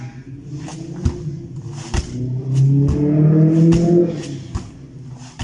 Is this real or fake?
real